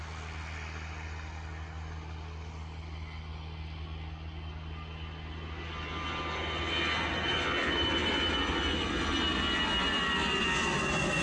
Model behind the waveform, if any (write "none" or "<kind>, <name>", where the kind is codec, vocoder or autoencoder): none